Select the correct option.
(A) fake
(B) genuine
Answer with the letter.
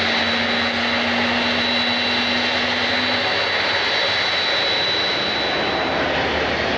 B